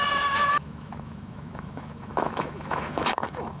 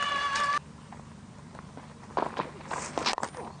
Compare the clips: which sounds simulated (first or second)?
first